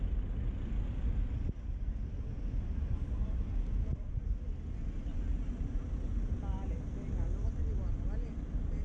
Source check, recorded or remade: recorded